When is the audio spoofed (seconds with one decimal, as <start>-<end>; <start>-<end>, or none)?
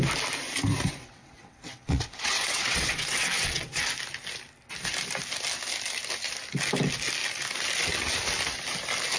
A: 1.0-3.9